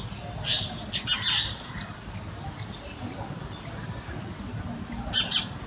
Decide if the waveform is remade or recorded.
recorded